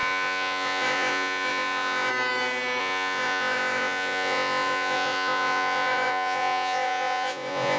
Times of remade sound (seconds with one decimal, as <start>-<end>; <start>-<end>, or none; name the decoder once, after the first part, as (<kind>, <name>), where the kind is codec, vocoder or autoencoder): 0.0-2.1 (vocoder, Vocos); 2.8-7.8

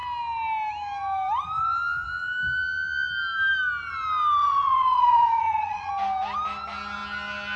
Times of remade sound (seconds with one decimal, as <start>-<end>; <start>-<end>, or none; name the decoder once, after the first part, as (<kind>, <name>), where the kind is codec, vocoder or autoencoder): 4.4-5.9 (vocoder, Vocos)

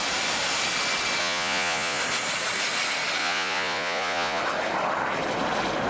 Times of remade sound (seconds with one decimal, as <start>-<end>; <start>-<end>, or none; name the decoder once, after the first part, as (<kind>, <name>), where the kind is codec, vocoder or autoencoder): 1.2-2.0 (vocoder, Vocos); 3.2-4.4

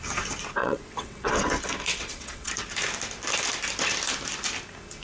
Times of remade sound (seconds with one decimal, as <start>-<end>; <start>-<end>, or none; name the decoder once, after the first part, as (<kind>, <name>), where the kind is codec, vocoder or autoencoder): 0.6-1.3 (vocoder, WaveNeXt); 1.9-2.5